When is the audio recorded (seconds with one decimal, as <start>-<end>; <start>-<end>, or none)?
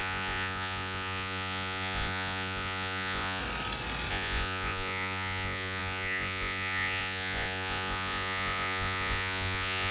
3.4-4.1